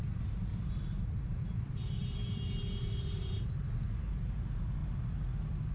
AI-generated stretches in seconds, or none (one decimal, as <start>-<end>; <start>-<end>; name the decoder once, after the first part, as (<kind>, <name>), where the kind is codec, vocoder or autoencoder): 0.5-3.9 (vocoder, BigVGAN v2)

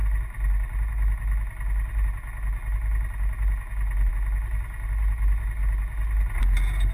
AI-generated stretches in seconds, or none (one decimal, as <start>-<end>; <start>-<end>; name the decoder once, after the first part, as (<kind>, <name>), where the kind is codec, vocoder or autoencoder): none